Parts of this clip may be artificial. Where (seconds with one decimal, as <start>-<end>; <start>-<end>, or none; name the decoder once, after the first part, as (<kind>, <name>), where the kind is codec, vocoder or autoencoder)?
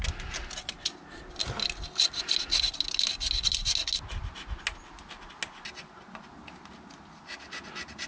none